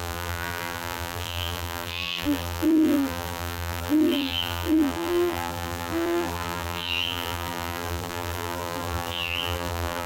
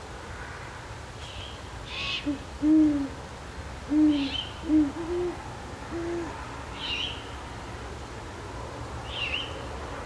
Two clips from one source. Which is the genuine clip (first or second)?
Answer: second